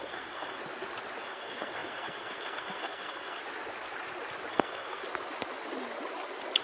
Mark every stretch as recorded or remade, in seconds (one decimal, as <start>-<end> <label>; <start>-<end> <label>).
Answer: 0.0-0.6 remade; 0.6-1.2 recorded; 1.2-3.4 remade; 3.4-4.5 recorded; 4.5-5.0 remade; 5.0-6.6 recorded